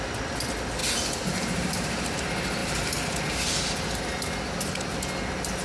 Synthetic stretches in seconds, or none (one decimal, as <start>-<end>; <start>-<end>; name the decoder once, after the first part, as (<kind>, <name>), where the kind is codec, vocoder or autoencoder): 0.8-2.2 (vocoder, BigVGAN v2); 2.6-3.4